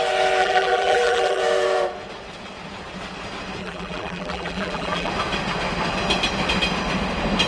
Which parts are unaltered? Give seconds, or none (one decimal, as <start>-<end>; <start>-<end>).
0.0-0.4; 1.4-3.6; 5.1-7.5